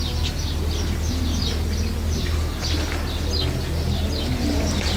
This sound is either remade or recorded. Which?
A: recorded